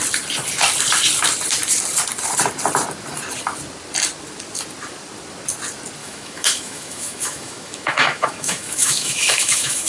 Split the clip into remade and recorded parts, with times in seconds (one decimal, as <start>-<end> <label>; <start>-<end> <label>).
0.0-6.0 recorded; 6.0-9.9 remade